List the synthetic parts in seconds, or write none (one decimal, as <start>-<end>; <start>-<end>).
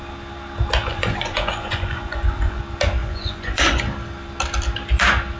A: 0.9-2.6; 3.0-3.8